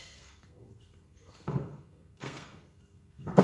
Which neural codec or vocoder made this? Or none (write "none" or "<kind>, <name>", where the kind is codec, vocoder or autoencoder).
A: codec, SNAC